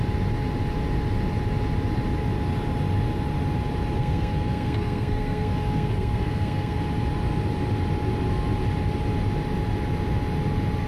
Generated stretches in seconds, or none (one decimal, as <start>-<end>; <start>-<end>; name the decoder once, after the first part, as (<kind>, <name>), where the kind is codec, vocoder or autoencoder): 4.0-6.8 (codec, SNAC)